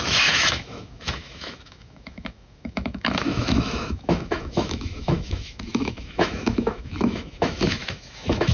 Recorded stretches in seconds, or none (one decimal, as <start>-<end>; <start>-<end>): none